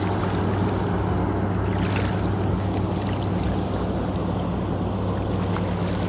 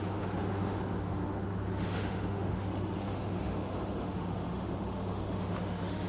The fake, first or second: second